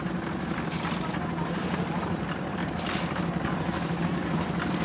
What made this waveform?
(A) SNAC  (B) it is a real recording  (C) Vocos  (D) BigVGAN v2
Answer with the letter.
B